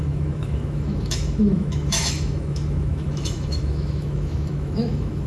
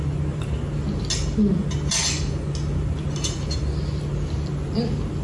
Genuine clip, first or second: second